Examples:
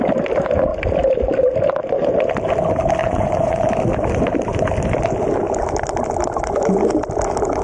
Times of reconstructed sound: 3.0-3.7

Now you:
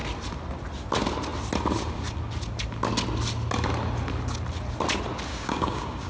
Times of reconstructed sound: 5.3-6.1

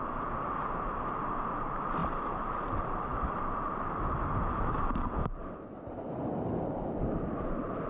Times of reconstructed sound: none

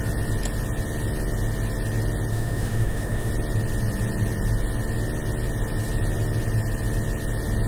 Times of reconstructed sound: 2.3-3.3

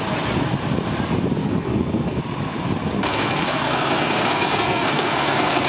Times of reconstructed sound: 1.4-2.2; 3.1-5.7

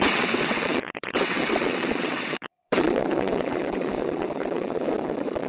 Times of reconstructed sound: 0.0-5.5